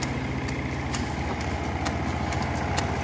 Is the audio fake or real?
real